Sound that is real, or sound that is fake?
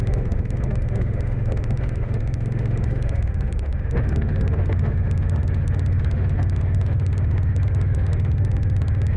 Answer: fake